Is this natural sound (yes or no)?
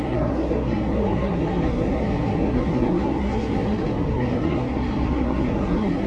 no